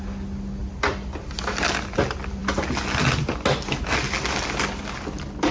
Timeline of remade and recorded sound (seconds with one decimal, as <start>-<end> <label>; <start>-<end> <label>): 0.0-5.5 recorded